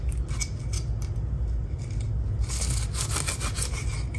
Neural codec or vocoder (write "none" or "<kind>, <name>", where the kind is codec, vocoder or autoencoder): none